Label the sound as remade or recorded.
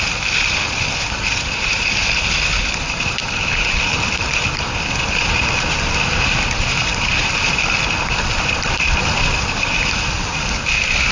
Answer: recorded